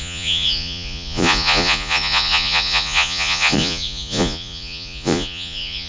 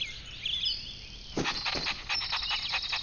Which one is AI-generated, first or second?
first